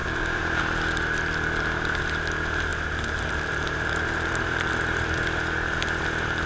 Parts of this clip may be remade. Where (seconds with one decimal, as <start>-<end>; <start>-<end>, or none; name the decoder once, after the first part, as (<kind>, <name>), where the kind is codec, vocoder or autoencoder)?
0.0-0.6 (vocoder, BigVGAN v2); 2.7-4.7